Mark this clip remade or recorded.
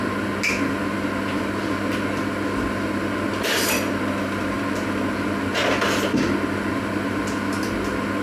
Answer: recorded